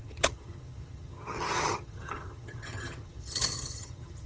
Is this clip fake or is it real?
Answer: fake